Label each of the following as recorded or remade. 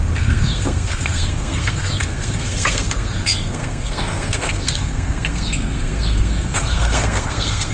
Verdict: remade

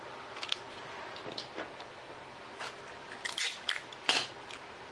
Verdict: recorded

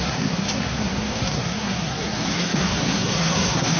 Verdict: remade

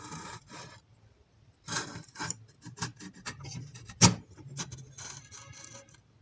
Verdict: recorded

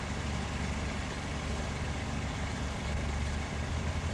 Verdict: recorded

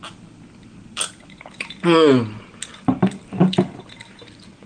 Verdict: recorded